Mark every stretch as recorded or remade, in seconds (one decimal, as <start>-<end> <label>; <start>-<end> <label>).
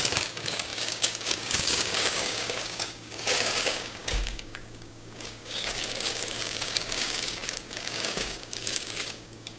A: 0.0-9.6 remade